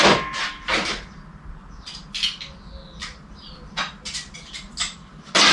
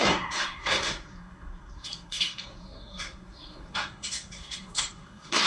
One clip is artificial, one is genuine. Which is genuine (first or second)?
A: first